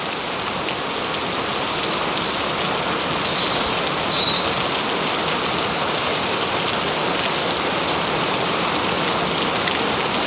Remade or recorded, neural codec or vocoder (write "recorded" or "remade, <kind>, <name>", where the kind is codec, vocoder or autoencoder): recorded